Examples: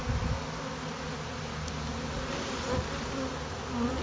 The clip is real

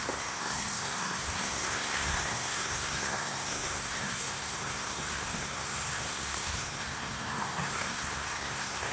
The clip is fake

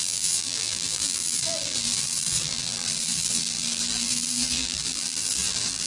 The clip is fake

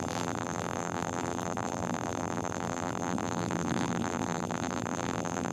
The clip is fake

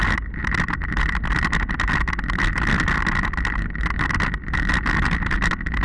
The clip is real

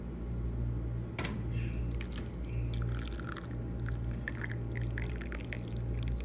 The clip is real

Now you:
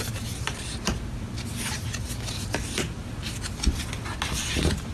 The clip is real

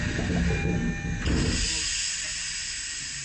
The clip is real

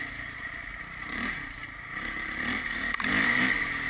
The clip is fake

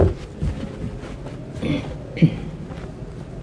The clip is real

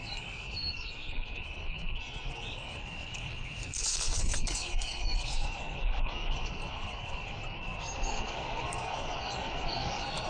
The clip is fake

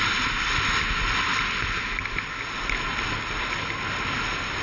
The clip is real